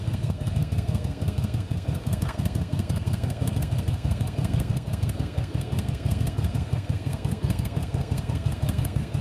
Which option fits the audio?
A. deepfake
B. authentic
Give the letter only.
A